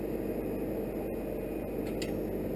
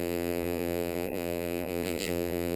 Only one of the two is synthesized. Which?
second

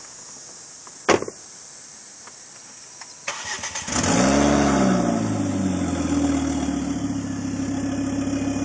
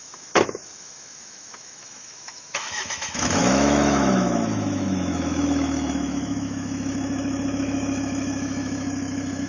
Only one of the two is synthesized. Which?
second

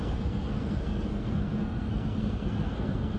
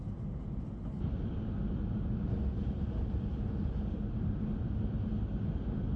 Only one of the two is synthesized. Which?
first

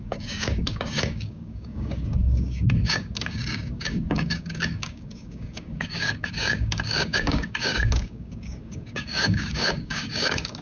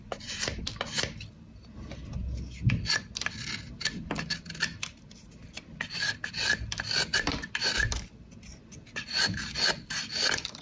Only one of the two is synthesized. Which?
first